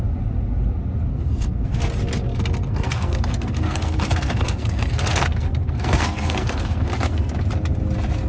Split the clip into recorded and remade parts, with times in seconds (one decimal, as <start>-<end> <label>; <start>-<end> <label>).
0.0-1.1 recorded; 1.1-1.8 remade; 1.8-2.3 recorded; 2.3-7.3 remade; 7.3-8.3 recorded